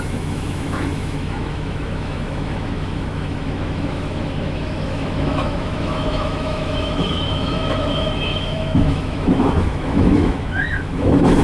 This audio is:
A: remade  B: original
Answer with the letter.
A